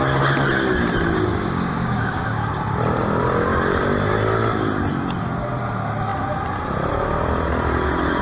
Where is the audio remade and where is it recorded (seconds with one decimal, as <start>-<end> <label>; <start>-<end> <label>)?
0.0-1.3 recorded; 1.3-2.5 remade; 2.5-8.2 recorded